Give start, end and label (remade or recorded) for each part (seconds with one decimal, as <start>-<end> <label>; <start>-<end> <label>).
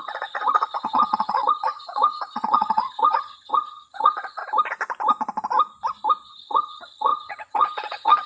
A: 0.0-4.4 remade; 4.4-6.3 recorded; 6.3-8.3 remade